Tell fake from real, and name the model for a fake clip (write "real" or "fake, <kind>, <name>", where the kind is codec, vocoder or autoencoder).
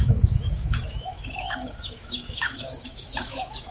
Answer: fake, autoencoder, DAC-VAE